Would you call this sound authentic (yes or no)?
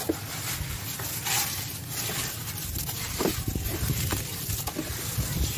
no